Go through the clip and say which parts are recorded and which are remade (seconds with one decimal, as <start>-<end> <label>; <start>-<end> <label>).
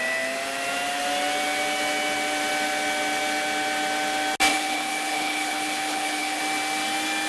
0.0-4.5 recorded; 4.5-6.4 remade; 6.4-7.3 recorded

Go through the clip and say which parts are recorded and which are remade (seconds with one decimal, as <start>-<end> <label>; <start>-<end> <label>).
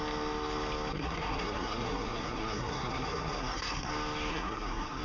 0.0-0.9 recorded; 0.9-3.9 remade; 3.9-4.3 recorded; 4.3-5.0 remade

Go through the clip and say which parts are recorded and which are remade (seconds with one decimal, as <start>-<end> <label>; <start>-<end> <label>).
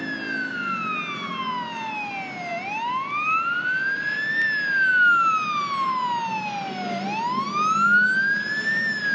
0.0-9.1 recorded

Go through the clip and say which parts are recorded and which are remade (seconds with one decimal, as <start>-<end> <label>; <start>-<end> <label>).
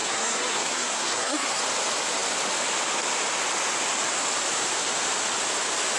0.0-1.6 remade; 1.6-6.0 recorded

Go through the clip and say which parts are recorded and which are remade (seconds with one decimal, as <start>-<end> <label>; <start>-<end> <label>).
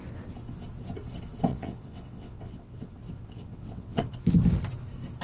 0.0-1.5 recorded; 1.5-2.9 remade; 2.9-3.4 recorded; 3.4-4.0 remade; 4.0-5.2 recorded